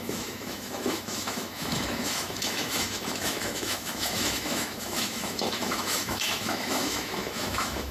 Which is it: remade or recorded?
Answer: remade